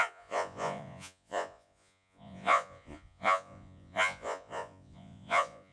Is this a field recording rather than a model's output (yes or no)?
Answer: no